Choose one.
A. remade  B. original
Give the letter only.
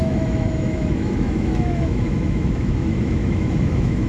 A